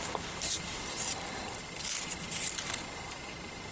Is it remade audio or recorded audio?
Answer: recorded